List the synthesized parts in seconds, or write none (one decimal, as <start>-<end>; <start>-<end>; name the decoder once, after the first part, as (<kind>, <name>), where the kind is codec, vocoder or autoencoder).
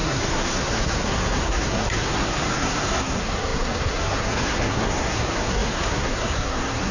0.0-6.9 (codec, SNAC)